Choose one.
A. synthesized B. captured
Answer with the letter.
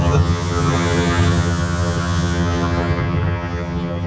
A